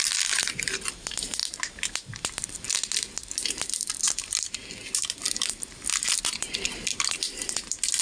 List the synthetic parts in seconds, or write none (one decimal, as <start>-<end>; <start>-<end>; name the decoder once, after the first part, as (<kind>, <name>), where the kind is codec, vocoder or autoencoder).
none